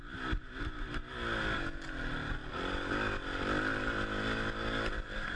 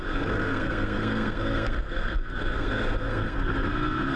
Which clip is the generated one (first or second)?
second